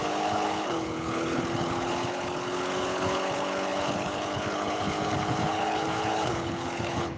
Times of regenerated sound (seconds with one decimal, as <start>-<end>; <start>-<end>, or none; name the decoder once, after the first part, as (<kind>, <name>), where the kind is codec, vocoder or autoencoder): 0.0-7.2 (codec, HILCodec)